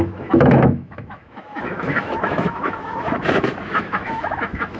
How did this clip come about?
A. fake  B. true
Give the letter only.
A